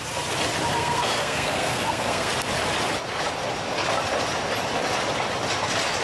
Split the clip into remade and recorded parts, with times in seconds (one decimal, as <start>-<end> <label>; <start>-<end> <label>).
0.0-0.7 recorded; 0.7-2.3 remade; 2.3-6.0 recorded